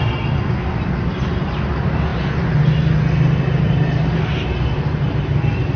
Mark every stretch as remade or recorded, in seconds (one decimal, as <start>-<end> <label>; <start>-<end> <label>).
0.0-5.8 recorded